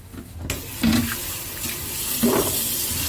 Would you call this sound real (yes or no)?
yes